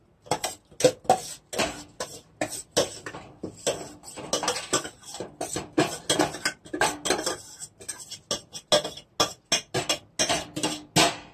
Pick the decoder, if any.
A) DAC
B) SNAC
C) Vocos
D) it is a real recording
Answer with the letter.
D